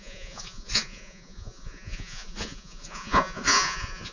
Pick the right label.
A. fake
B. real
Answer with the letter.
A